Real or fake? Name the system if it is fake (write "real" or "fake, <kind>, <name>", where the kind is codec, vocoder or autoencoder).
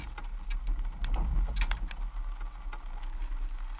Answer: real